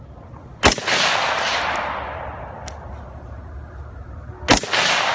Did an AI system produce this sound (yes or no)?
no